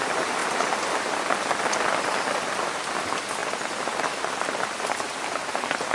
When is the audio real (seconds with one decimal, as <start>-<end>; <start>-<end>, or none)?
0.0-5.9